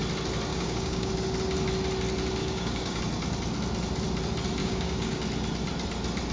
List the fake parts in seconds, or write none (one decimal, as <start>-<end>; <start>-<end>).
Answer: 0.5-1.1; 2.4-3.0; 4.6-5.2